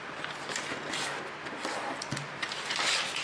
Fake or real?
real